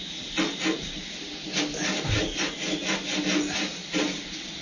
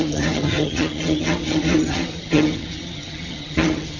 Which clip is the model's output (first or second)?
second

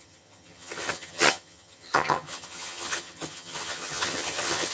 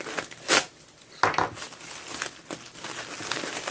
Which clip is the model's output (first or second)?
first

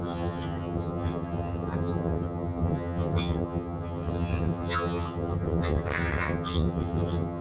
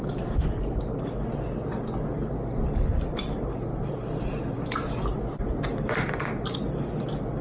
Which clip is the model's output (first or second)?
first